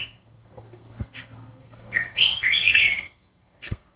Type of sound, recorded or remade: remade